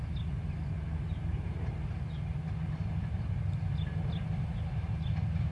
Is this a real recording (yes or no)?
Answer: yes